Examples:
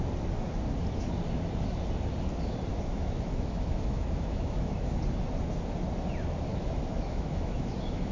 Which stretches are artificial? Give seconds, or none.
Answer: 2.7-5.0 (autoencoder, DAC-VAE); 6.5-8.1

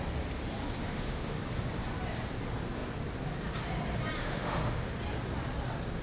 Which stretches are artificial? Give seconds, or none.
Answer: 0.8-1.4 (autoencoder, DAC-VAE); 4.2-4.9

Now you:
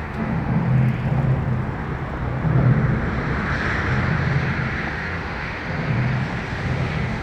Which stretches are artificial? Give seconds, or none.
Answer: 0.0-0.6 (autoencoder, DAC-VAE); 4.9-5.6; 6.6-7.2